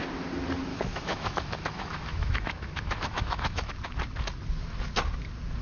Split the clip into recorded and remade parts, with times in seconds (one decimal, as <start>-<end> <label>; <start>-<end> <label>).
0.0-0.7 recorded; 0.7-3.7 remade; 3.7-5.6 recorded